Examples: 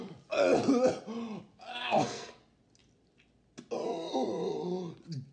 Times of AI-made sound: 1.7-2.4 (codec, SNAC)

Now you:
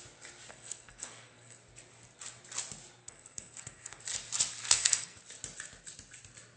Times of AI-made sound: 0.5-1.6 (codec, SNAC); 3.0-4.0; 4.6-5.2

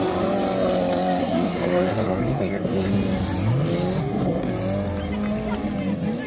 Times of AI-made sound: 1.2-2.9 (codec, SNAC); 4.0-4.5

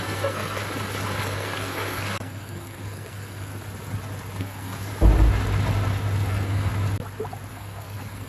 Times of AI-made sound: 0.0-0.6 (codec, SNAC); 1.2-3.5; 4.4-4.9; 6.3-6.7; 7.5-8.3

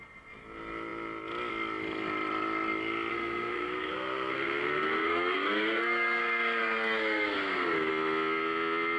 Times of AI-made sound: 3.1-7.9 (codec, SNAC)

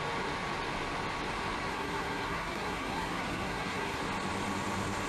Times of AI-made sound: 1.7-4.0 (codec, SNAC)

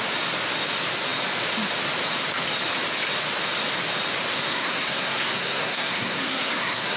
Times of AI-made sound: 4.5-7.0 (codec, SNAC)

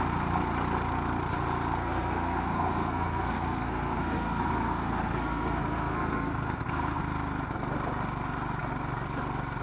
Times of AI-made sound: 1.8-7.0 (codec, SNAC)